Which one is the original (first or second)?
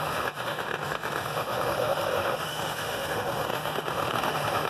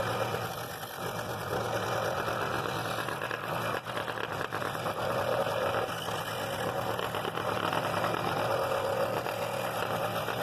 second